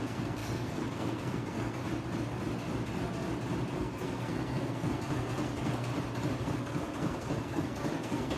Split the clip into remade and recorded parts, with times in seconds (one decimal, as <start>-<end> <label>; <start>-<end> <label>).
0.0-1.8 remade; 1.8-3.7 recorded; 3.7-5.9 remade; 5.9-6.4 recorded; 6.4-8.4 remade